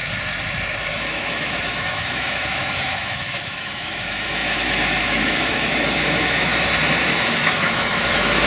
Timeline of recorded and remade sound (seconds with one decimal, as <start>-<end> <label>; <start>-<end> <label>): 0.0-0.9 recorded; 0.9-6.5 remade; 6.5-7.2 recorded; 7.2-8.5 remade